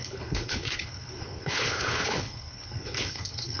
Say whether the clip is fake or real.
fake